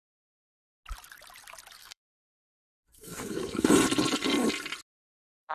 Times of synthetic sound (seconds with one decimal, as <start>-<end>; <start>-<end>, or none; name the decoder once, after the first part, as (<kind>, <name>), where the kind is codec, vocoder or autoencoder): 1.8-3.7 (codec, SNAC)